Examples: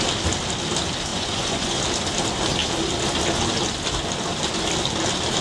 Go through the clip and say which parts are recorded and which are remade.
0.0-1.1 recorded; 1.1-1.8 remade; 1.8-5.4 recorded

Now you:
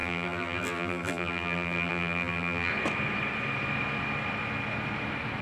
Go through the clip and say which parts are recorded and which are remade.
0.0-2.7 remade; 2.7-5.4 recorded

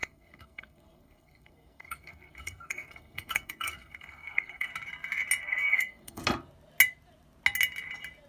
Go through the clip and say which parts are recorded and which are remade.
0.0-4.7 remade; 4.7-5.4 recorded; 5.4-6.2 remade; 6.2-8.3 recorded

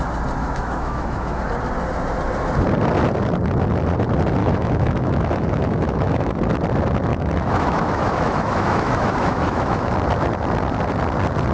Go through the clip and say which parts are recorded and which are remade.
0.0-0.4 recorded; 0.4-1.4 remade; 1.4-4.4 recorded; 4.4-6.4 remade; 6.4-7.1 recorded; 7.1-9.9 remade; 9.9-11.5 recorded